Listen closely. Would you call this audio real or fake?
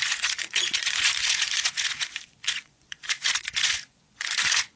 fake